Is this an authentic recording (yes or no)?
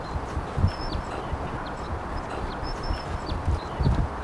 yes